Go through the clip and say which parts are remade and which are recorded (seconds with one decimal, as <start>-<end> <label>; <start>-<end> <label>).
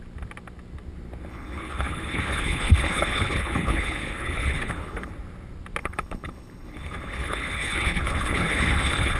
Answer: 0.0-1.3 recorded; 1.3-5.1 remade; 5.1-5.8 recorded; 5.8-9.2 remade